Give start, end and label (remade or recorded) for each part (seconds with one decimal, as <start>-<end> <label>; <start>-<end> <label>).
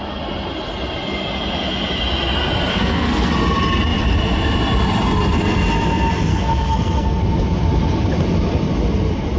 0.0-2.7 recorded; 2.7-3.3 remade; 3.3-6.3 recorded; 6.3-7.2 remade; 7.2-9.4 recorded